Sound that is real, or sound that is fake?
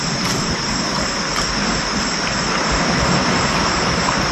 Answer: real